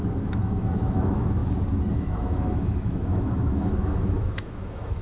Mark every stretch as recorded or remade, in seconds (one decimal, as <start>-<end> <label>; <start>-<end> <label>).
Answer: 0.0-1.4 remade; 1.4-1.9 recorded; 1.9-5.0 remade